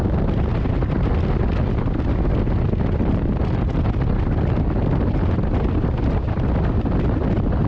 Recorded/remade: recorded